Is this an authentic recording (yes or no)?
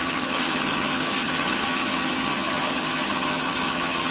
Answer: no